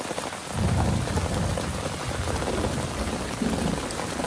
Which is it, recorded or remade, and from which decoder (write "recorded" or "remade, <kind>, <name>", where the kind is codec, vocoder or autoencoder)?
recorded